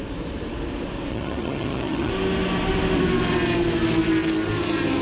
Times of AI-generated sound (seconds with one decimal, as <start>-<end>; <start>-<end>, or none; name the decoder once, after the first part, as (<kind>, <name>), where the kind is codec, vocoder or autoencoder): 1.1-2.1 (vocoder, HiFi-GAN)

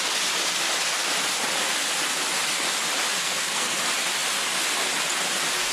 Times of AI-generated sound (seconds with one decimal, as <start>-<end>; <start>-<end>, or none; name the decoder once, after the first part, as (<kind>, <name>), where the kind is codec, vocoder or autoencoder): 3.2-3.8 (codec, SNAC)

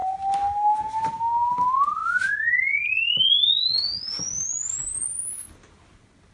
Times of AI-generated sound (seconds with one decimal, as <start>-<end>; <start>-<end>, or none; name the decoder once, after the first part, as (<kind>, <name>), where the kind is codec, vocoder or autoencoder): none

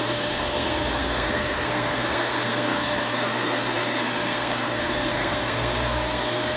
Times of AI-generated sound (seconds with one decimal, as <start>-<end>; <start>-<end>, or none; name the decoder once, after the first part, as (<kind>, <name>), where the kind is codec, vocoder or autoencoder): 0.0-6.6 (codec, SNAC)